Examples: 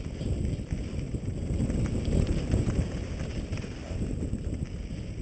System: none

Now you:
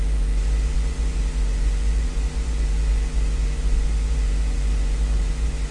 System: vocoder, Vocos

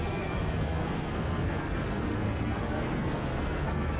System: codec, SNAC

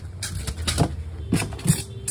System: none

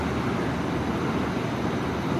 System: none